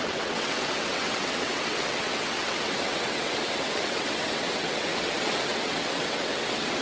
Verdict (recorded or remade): remade